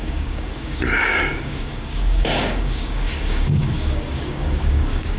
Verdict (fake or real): fake